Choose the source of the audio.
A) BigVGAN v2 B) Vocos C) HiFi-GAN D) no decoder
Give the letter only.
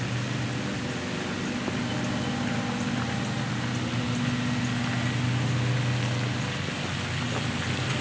D